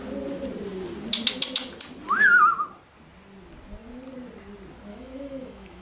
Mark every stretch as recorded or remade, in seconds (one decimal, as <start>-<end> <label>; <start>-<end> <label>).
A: 0.0-4.9 recorded; 4.9-5.8 remade